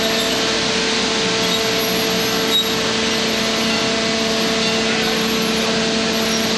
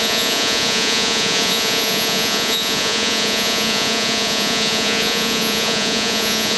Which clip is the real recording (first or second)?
first